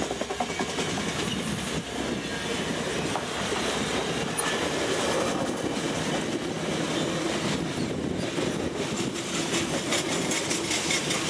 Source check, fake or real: real